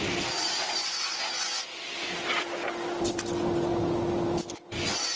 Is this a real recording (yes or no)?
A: yes